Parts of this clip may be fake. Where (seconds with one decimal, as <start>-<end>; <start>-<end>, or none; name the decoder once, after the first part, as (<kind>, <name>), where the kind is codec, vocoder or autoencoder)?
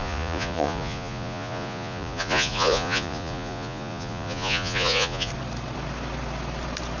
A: 0.0-5.3 (vocoder, Vocos)